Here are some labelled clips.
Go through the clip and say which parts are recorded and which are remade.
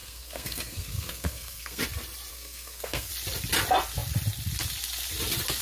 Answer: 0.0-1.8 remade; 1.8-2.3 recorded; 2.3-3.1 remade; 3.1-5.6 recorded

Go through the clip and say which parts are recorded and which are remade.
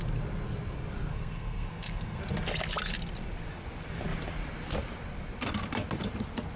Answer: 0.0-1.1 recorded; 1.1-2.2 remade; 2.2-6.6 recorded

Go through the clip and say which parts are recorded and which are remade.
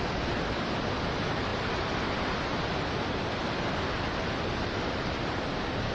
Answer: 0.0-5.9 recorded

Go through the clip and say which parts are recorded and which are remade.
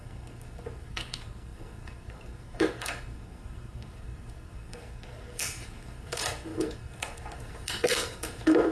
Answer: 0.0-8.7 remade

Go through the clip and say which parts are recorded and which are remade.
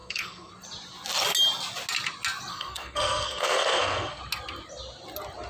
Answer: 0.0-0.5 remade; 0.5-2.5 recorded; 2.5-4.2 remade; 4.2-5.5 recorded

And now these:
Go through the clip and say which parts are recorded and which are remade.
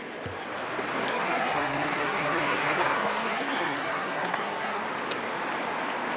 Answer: 0.0-1.1 recorded; 1.1-4.8 remade; 4.8-6.2 recorded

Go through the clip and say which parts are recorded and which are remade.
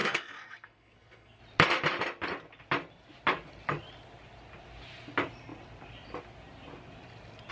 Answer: 0.0-1.4 remade; 1.4-7.5 recorded